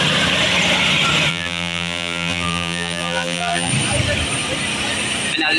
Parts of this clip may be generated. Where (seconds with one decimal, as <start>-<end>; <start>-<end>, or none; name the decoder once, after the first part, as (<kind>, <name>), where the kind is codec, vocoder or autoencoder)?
1.3-3.7 (vocoder, BigVGAN v2)